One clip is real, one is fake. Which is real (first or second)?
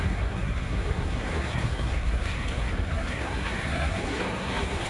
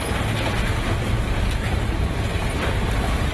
second